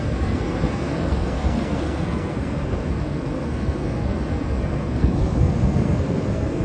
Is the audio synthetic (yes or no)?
yes